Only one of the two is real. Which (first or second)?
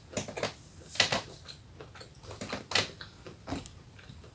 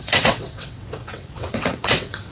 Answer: first